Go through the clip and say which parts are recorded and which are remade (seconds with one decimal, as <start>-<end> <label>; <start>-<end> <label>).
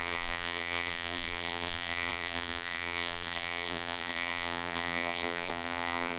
0.0-6.2 remade